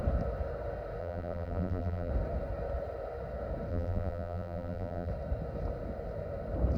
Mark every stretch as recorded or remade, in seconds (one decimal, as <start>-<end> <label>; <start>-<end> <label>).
0.0-1.0 recorded; 1.0-2.1 remade; 2.1-3.7 recorded; 3.7-5.1 remade; 5.1-6.8 recorded